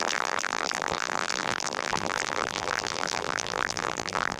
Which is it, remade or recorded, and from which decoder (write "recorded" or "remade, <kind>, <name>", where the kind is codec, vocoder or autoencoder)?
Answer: remade, vocoder, BigVGAN v2